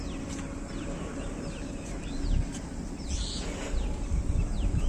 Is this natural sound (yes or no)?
yes